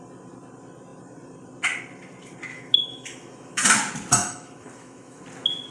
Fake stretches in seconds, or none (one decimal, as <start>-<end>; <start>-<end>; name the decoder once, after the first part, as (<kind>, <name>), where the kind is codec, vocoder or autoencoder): 2.5-3.6 (autoencoder, DAC-VAE); 4.2-5.2